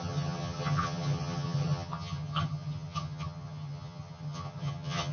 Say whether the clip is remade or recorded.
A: remade